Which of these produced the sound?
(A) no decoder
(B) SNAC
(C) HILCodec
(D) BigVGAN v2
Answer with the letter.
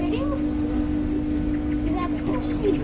A